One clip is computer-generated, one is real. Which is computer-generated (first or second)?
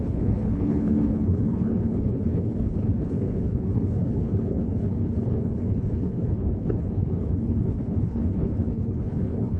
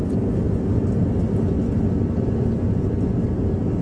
first